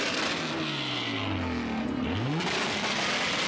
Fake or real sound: real